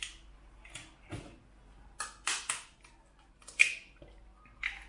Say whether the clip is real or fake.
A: real